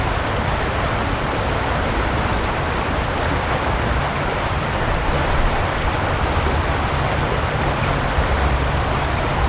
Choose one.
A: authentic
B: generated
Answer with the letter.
B